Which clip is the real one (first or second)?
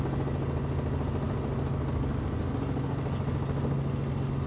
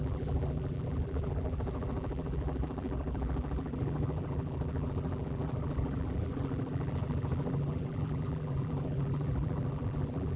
first